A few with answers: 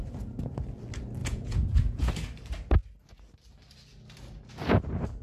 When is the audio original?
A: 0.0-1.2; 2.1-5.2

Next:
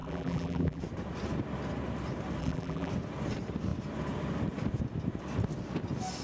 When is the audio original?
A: 0.8-2.4; 2.9-6.2

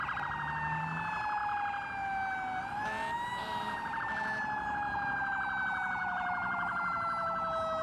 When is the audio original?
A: 0.0-3.4; 4.0-6.0; 6.9-7.8

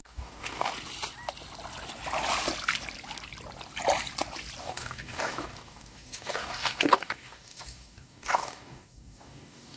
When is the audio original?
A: 0.7-4.6

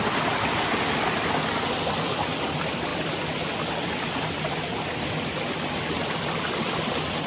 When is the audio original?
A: 0.0-7.3